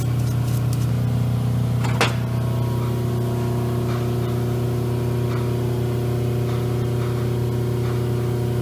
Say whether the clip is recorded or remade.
recorded